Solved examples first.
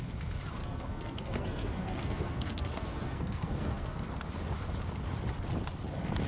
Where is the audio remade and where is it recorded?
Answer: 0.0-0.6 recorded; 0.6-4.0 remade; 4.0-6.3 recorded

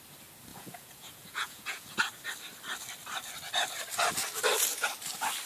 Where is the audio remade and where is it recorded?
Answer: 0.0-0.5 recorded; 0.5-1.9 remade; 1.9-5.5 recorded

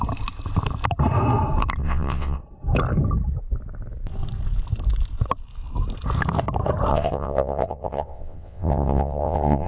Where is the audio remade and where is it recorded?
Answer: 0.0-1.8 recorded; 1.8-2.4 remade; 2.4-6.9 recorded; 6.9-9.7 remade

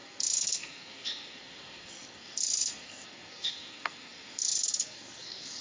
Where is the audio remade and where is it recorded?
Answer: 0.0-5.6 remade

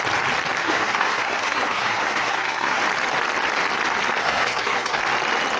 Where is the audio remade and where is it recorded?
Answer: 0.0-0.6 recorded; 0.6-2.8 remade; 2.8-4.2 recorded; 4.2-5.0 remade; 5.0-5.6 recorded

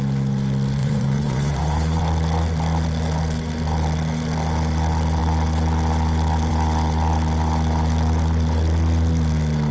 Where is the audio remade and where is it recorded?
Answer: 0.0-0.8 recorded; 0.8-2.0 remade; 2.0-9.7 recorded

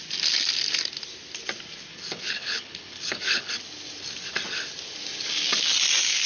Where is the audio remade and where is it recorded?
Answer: 0.0-1.9 recorded; 1.9-3.5 remade; 3.5-6.3 recorded

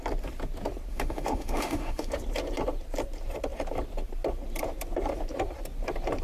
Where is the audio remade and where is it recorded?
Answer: 0.0-0.9 recorded; 0.9-2.1 remade; 2.1-6.2 recorded